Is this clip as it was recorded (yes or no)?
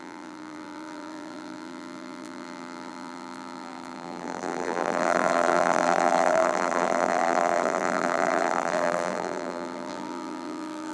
no